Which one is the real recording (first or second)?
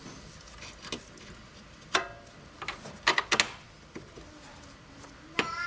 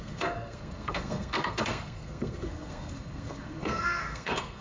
first